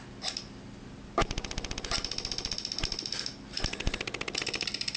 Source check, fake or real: real